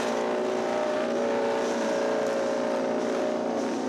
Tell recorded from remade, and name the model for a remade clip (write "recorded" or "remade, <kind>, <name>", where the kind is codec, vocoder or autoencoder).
recorded